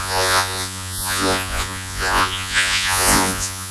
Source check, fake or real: fake